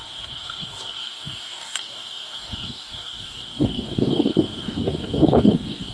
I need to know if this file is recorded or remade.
remade